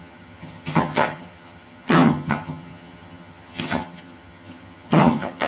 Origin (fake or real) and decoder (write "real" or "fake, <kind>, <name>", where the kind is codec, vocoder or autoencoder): fake, vocoder, HiFi-GAN